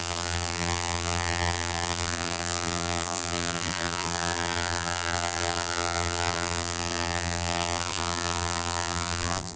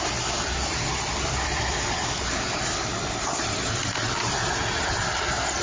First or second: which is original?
second